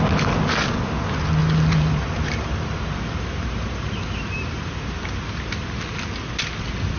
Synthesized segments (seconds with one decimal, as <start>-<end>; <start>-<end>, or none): 1.4-5.0